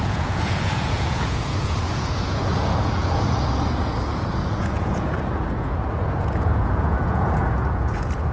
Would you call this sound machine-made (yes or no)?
yes